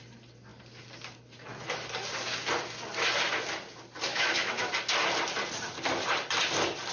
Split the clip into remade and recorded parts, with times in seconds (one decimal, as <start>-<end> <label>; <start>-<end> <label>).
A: 0.0-4.1 recorded; 4.1-4.7 remade; 4.7-6.9 recorded